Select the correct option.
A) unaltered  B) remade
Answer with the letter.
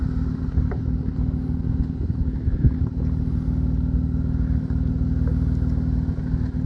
A